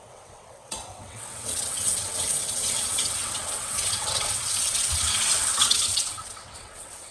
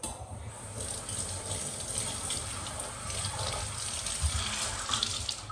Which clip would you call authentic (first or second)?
second